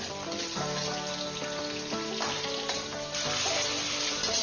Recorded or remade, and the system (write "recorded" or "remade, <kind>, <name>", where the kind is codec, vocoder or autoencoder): recorded